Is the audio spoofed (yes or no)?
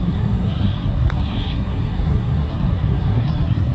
yes